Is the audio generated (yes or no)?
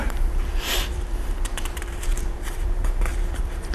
yes